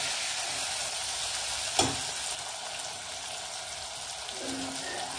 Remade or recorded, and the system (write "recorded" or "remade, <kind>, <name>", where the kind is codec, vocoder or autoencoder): recorded